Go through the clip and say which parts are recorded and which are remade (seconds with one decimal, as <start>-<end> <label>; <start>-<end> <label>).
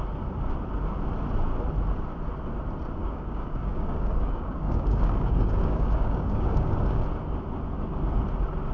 0.0-3.0 recorded; 3.0-7.0 remade; 7.0-8.7 recorded